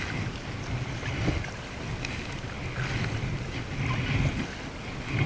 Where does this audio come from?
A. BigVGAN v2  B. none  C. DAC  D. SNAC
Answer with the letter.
B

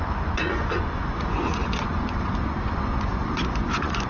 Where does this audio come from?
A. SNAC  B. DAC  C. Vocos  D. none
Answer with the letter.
C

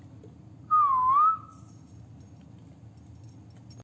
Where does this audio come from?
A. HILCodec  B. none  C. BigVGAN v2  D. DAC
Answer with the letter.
B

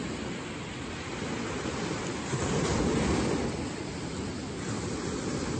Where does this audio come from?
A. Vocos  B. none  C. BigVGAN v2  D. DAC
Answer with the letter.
B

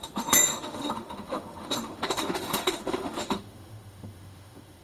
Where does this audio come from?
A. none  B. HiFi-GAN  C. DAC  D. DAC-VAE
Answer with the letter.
D